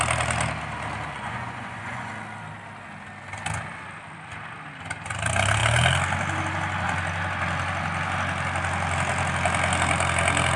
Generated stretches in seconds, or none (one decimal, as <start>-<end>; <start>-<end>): 1.1-2.1